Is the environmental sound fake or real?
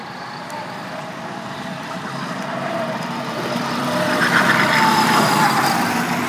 fake